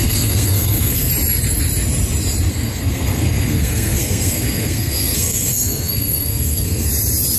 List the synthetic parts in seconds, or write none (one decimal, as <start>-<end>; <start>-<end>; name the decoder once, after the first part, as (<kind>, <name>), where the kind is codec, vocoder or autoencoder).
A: 0.0-1.1 (codec, SNAC); 2.5-6.9